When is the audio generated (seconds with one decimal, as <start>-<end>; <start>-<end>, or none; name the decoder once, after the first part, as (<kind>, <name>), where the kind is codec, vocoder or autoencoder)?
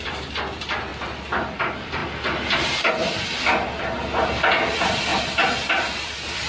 0.0-0.9 (vocoder, BigVGAN v2); 1.5-2.0; 2.9-5.1; 5.9-6.5